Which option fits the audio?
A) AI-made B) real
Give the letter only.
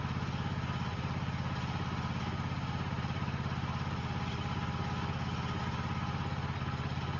B